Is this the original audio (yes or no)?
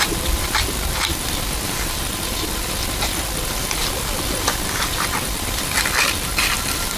no